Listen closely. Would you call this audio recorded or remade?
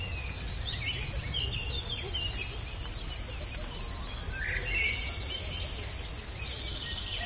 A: recorded